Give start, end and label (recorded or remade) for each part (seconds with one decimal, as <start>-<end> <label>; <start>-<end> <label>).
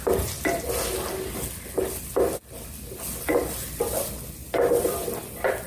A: 0.0-4.4 recorded; 4.4-5.7 remade